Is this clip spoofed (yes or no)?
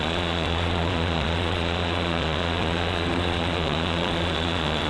yes